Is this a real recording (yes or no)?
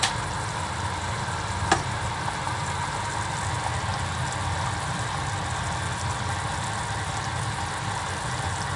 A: yes